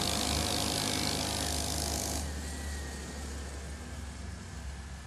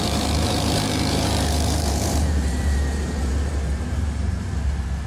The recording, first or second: first